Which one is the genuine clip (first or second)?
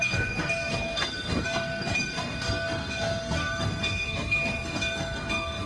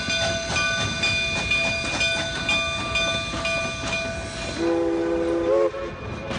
second